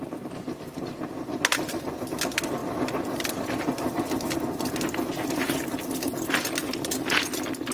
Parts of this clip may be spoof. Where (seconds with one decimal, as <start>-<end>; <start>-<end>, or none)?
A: none